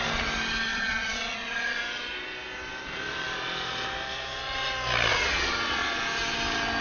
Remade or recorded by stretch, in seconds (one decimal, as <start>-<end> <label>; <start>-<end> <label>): 0.0-0.7 recorded; 0.7-1.8 remade; 1.8-5.1 recorded; 5.1-6.0 remade; 6.0-6.8 recorded